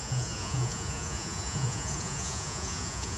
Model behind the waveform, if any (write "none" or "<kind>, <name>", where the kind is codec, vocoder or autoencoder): vocoder, Vocos